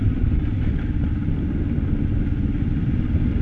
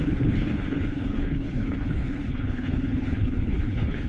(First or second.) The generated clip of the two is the second